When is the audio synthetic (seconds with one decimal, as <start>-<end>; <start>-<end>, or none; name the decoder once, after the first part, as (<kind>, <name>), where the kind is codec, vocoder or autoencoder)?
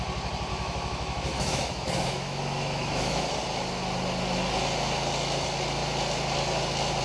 0.5-3.3 (autoencoder, DAC-VAE)